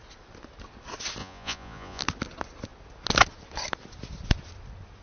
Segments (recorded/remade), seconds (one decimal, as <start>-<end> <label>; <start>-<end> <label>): 0.0-1.2 recorded; 1.2-2.0 remade; 2.0-5.0 recorded